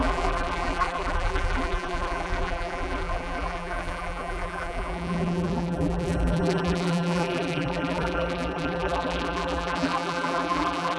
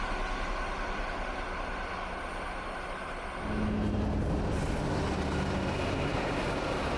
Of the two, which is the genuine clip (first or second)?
second